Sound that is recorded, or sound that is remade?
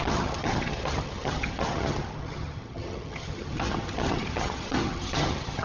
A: remade